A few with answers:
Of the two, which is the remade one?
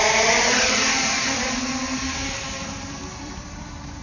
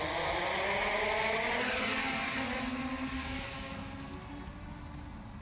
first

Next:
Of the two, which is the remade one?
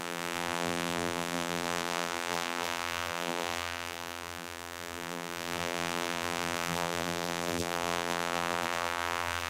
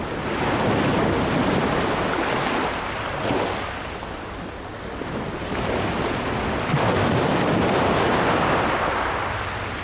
first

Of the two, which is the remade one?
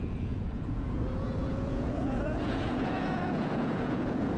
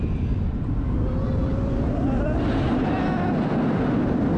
first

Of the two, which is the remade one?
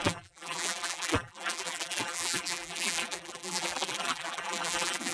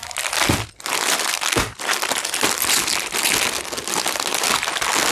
first